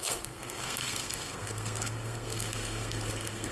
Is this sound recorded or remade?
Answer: remade